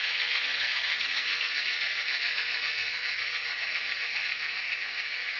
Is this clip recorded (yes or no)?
no